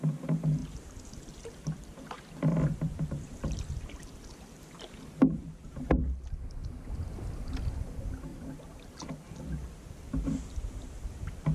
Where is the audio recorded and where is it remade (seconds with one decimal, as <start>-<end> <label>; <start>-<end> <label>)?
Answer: 0.0-0.6 recorded; 0.6-4.3 remade; 4.3-5.4 recorded; 5.4-6.0 remade; 6.0-6.6 recorded; 6.6-7.2 remade; 7.2-8.3 recorded; 8.3-9.3 remade; 9.3-11.5 recorded

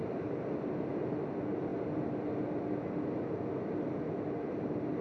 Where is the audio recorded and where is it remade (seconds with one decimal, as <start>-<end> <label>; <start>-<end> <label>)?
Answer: 0.0-5.0 recorded

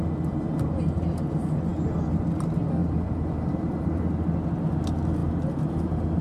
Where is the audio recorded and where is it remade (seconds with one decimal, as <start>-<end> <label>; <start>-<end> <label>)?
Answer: 0.0-1.7 recorded; 1.7-2.2 remade; 2.2-2.8 recorded; 2.8-4.0 remade; 4.0-6.2 recorded

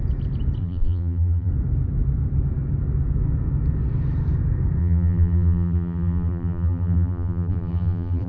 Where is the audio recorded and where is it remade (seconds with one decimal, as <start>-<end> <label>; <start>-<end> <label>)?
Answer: 0.0-0.6 recorded; 0.6-1.5 remade; 1.5-4.8 recorded; 4.8-8.3 remade

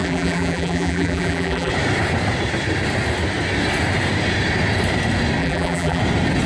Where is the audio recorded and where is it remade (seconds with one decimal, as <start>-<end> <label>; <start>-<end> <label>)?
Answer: 0.0-1.7 remade; 1.7-5.4 recorded; 5.4-6.0 remade; 6.0-6.5 recorded

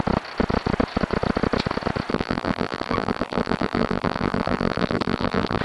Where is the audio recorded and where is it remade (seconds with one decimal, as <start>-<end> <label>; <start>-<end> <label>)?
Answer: 0.0-2.1 recorded; 2.1-5.6 remade

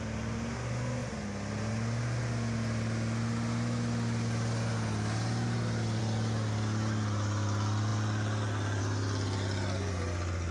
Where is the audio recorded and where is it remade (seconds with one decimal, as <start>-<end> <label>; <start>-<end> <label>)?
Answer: 0.0-10.5 recorded

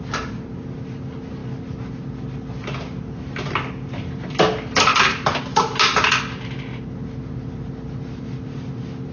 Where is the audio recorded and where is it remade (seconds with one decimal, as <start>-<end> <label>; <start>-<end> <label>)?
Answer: 0.0-9.1 recorded